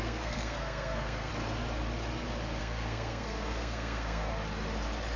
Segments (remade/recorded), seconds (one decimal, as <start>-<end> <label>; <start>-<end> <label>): 0.0-1.3 remade; 1.3-2.6 recorded; 2.6-4.3 remade; 4.3-5.2 recorded